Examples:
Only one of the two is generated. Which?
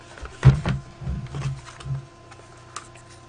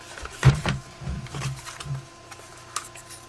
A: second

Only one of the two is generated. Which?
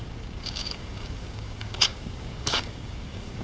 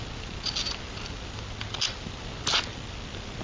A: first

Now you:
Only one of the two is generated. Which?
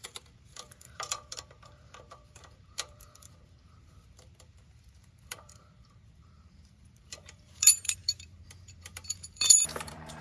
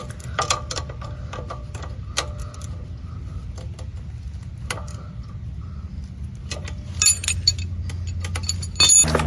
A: first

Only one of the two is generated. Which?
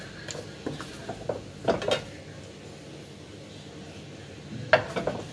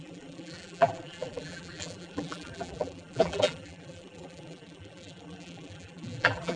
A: second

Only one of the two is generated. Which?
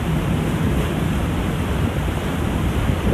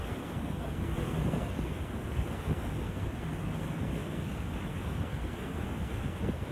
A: second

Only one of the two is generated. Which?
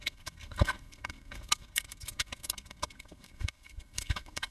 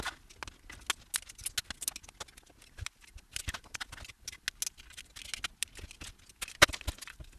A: first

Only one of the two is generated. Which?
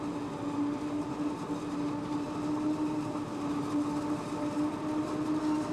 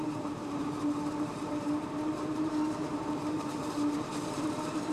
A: second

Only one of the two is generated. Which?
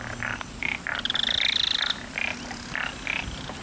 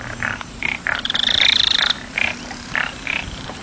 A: second